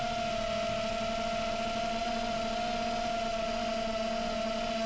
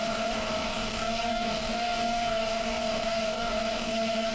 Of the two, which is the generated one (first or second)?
second